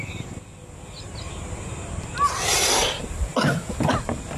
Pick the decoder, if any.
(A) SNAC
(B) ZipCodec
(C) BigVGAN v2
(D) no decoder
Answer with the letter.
D